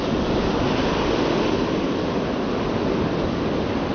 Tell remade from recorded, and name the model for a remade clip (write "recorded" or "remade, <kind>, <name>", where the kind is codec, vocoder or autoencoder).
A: recorded